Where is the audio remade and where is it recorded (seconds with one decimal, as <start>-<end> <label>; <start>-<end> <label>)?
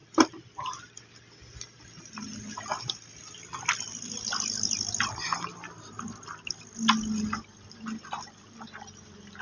0.0-9.4 recorded